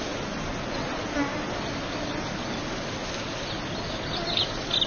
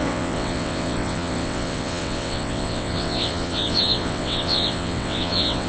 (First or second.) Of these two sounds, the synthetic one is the second